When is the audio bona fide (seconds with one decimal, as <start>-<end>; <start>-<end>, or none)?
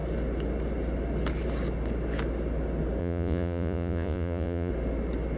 0.0-3.0; 4.7-5.4